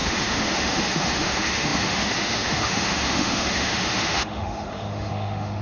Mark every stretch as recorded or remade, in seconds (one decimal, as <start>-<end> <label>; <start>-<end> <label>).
0.0-5.6 remade